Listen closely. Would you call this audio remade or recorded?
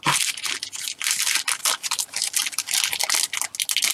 recorded